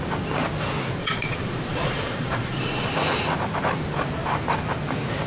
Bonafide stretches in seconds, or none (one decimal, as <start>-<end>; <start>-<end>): 0.0-1.0; 2.9-5.3